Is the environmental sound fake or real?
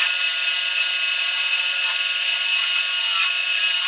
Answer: real